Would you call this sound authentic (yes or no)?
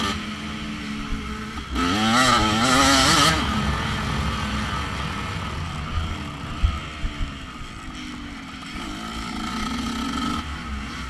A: yes